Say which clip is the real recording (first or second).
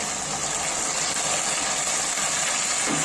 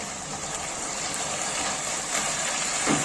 first